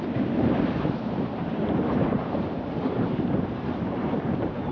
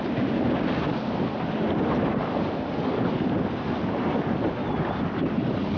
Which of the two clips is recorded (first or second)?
second